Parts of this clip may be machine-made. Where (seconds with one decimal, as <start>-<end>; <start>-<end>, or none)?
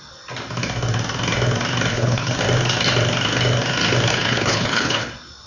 1.9-2.4; 4.1-5.1